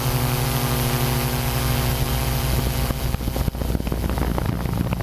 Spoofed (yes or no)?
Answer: no